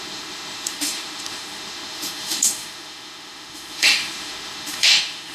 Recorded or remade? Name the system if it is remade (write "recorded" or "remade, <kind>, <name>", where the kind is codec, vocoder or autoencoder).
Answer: remade, autoencoder, DAC-VAE